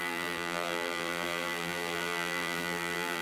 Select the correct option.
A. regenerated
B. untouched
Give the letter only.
A